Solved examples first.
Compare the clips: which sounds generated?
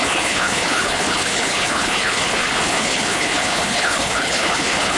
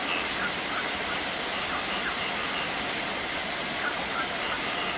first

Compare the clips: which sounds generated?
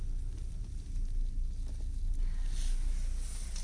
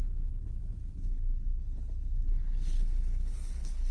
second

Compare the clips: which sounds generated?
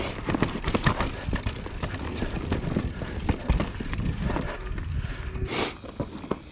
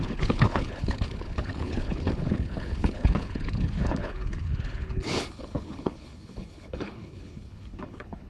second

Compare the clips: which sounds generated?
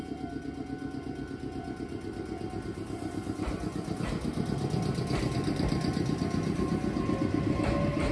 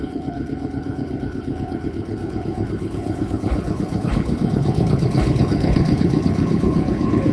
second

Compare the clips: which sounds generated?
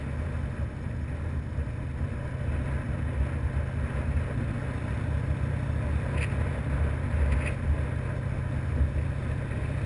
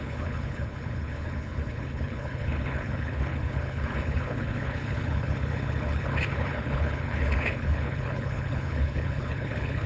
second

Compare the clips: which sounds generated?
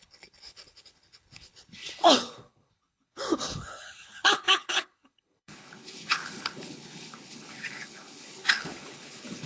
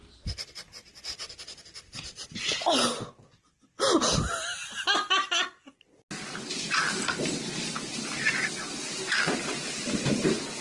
first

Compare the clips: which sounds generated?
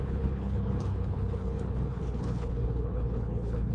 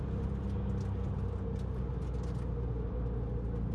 first